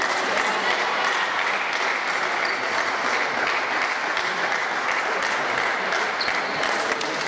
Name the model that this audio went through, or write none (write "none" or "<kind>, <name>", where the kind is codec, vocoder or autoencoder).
none